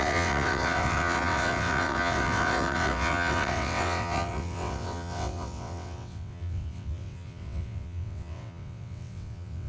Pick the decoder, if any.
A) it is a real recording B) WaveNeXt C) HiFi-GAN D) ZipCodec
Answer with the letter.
B